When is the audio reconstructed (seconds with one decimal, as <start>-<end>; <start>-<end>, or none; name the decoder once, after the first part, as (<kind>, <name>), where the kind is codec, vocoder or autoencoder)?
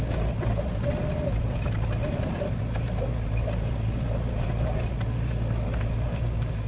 6.1-6.7 (codec, DAC)